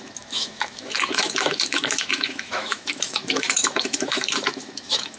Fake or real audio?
fake